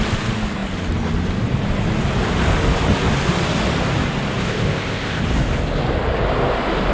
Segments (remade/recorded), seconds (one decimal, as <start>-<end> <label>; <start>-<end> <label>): 0.0-4.4 recorded; 4.4-5.2 remade; 5.2-6.9 recorded